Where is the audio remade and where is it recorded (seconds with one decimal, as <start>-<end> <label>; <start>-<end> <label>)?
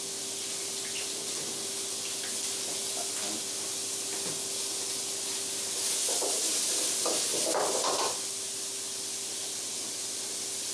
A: 0.0-10.7 recorded